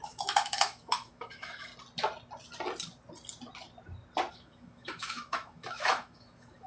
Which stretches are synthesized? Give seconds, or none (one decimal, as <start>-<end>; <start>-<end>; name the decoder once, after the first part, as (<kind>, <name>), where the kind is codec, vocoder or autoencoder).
0.0-1.7 (autoencoder, DAC-VAE); 4.3-6.7